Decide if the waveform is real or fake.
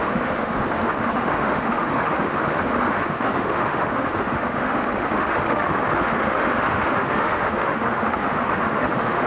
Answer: fake